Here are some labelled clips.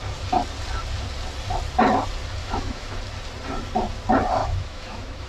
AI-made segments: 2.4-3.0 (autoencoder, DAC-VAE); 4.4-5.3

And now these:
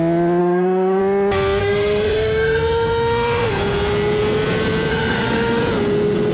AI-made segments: 0.4-1.0 (autoencoder, DAC-VAE); 1.6-3.5; 4.9-5.6

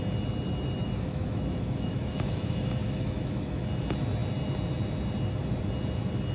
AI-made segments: 0.8-3.6 (autoencoder, DAC-VAE)

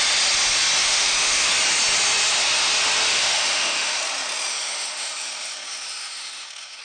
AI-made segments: 0.8-1.5 (autoencoder, DAC-VAE); 3.1-4.0; 4.5-6.8

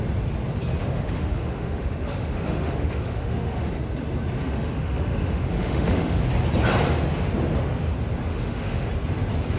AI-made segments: 0.8-3.7 (autoencoder, DAC-VAE); 4.4-6.2; 8.3-8.9

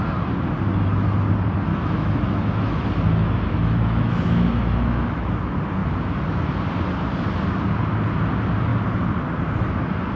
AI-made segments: 1.7-5.3 (autoencoder, DAC-VAE)